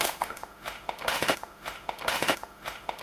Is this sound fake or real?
fake